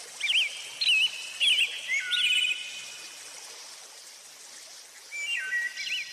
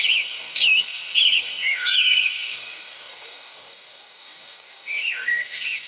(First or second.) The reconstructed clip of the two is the second